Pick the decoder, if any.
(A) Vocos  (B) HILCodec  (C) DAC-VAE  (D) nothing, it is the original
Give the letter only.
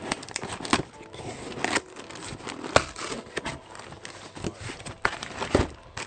D